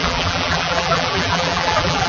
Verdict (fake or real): fake